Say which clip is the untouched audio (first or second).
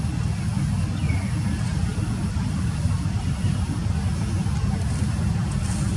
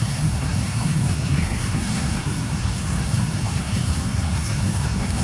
first